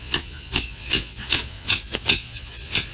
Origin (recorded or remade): remade